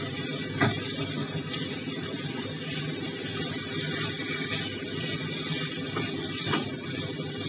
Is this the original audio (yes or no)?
yes